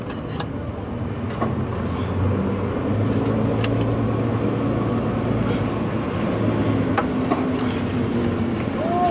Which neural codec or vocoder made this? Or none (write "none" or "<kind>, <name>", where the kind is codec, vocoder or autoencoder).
none